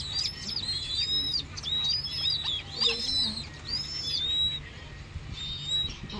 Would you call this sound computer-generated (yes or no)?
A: no